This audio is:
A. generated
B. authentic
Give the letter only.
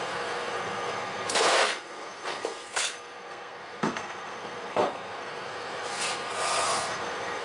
A